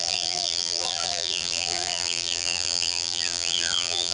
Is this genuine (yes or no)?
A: no